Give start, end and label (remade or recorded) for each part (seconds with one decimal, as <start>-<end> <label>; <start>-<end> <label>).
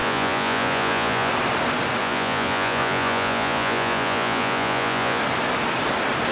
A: 0.0-1.3 remade; 1.3-2.0 recorded; 2.0-5.2 remade; 5.2-6.3 recorded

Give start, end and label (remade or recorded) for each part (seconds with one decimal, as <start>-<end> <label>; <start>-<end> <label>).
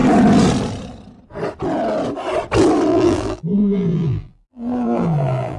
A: 0.0-2.9 recorded; 2.9-5.6 remade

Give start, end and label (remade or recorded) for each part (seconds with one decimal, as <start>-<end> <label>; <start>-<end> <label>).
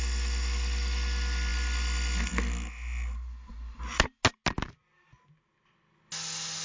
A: 0.0-6.6 recorded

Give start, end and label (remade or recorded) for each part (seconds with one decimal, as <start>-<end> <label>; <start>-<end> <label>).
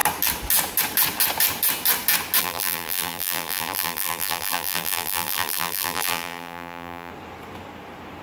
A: 0.0-2.4 recorded; 2.4-7.1 remade; 7.1-8.2 recorded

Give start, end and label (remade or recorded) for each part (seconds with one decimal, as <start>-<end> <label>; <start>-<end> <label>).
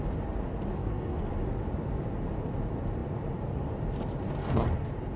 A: 0.0-0.8 recorded; 0.8-1.3 remade; 1.3-5.2 recorded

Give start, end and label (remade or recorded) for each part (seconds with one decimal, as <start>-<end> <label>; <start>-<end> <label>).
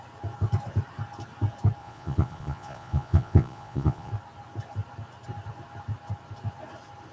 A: 0.0-1.8 recorded; 1.8-4.1 remade; 4.1-7.1 recorded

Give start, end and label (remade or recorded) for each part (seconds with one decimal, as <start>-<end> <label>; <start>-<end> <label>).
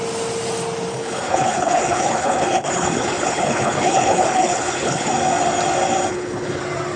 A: 0.0-0.9 recorded; 0.9-5.1 remade; 5.1-6.1 recorded; 6.1-6.6 remade; 6.6-7.0 recorded